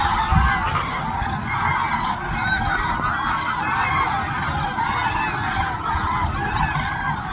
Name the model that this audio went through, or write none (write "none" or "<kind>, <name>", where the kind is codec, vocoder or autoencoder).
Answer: none